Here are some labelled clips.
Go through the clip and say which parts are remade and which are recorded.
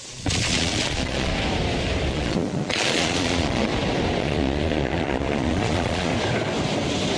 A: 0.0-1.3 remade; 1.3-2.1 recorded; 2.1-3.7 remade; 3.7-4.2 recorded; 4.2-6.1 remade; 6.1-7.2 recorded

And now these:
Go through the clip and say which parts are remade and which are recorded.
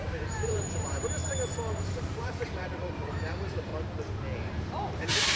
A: 0.0-1.2 remade; 1.2-1.8 recorded; 1.8-3.7 remade; 3.7-4.4 recorded; 4.4-5.4 remade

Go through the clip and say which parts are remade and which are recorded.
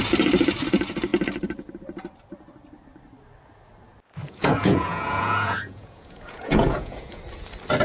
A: 0.0-4.2 recorded; 4.2-7.2 remade; 7.2-7.8 recorded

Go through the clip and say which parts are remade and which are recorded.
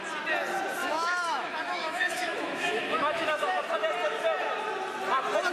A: 0.0-0.8 recorded; 0.8-3.6 remade; 3.6-5.5 recorded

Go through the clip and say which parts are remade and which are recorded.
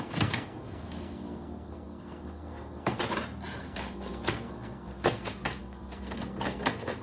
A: 0.0-3.0 remade; 3.0-3.6 recorded; 3.6-7.0 remade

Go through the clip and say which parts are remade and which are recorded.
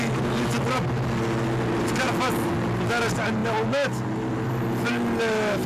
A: 0.0-5.7 recorded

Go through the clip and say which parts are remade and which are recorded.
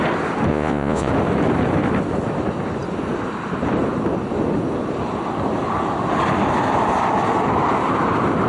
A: 0.0-0.5 recorded; 0.5-1.1 remade; 1.1-8.5 recorded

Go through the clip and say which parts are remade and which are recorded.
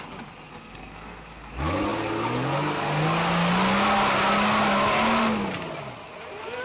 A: 0.0-0.5 recorded; 0.5-1.5 remade; 1.5-6.6 recorded